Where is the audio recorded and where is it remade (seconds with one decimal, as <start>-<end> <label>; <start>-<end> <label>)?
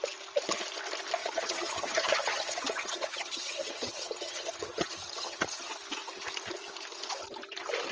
0.0-1.2 recorded; 1.2-5.7 remade; 5.7-7.9 recorded